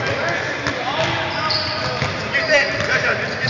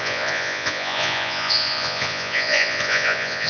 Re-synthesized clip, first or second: second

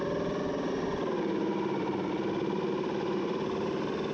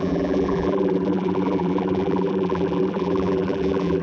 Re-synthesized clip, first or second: second